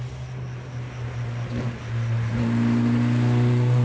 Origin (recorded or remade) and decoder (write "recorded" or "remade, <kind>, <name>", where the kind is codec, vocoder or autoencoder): recorded